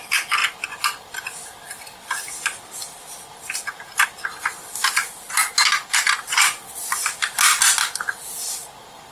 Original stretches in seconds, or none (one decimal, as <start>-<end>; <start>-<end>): 0.0-9.1